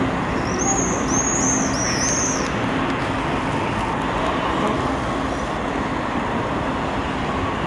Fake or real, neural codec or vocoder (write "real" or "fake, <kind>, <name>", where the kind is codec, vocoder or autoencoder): real